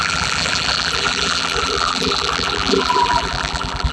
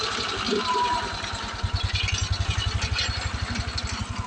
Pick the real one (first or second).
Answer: second